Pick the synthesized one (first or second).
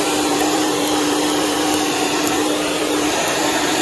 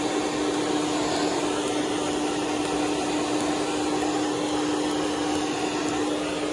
first